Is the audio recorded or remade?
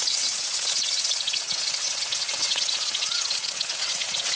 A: remade